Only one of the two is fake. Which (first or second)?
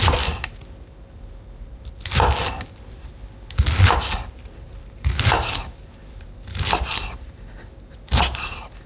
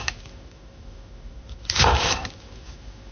second